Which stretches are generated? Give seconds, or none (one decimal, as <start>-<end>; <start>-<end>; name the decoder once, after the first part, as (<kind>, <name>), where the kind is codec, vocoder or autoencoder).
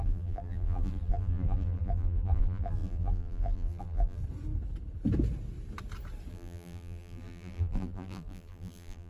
0.0-4.2 (vocoder, BigVGAN v2); 6.3-9.1